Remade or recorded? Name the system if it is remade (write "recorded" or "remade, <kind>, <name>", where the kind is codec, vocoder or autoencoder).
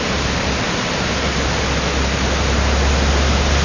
recorded